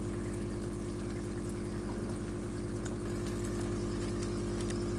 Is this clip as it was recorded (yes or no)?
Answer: yes